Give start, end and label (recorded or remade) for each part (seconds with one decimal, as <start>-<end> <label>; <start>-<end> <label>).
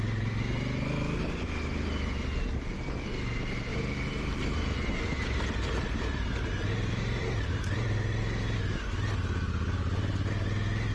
0.0-3.7 recorded; 3.7-8.2 remade; 8.2-10.9 recorded